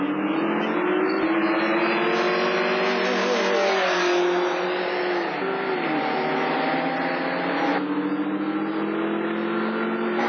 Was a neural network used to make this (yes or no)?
no